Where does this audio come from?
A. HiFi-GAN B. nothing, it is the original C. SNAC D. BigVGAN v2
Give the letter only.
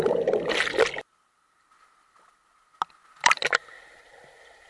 B